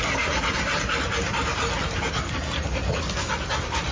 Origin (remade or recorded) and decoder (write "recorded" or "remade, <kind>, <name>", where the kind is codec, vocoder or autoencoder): recorded